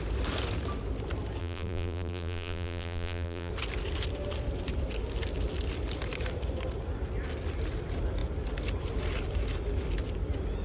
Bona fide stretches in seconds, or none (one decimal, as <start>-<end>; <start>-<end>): 0.0-1.4; 3.5-10.6